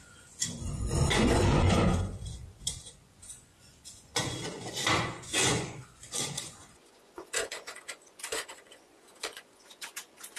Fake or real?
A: fake